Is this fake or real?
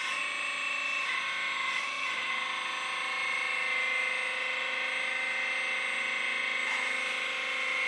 real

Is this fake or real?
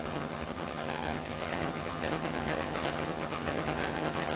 fake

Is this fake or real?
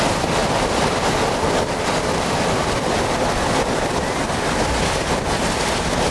real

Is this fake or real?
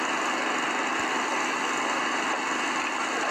real